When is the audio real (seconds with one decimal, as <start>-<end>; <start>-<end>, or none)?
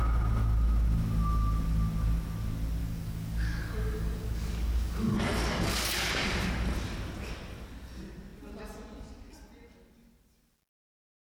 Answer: 0.0-2.8; 6.5-11.4